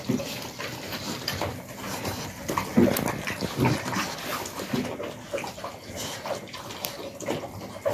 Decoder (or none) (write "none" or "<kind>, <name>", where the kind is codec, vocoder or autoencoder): none